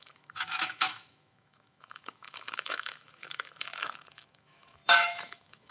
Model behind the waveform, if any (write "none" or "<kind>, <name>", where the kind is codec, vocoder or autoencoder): autoencoder, DAC-VAE